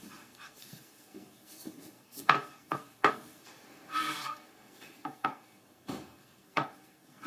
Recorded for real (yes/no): no